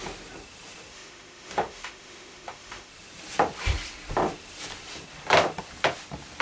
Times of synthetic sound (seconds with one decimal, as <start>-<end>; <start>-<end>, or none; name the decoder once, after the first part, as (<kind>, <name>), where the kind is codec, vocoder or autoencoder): 0.9-2.9 (autoencoder, DAC-VAE)